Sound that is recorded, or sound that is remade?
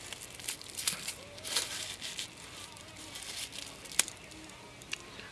recorded